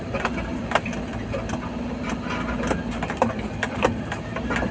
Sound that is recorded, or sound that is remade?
recorded